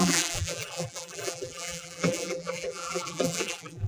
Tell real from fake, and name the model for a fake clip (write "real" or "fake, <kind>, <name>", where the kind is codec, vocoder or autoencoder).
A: fake, vocoder, BigVGAN v2